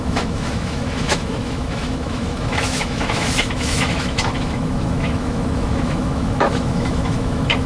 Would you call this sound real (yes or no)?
no